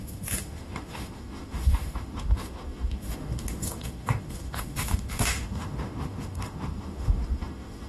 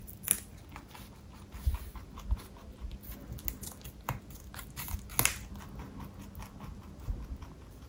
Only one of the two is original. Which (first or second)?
second